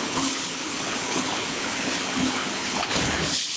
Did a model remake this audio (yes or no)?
yes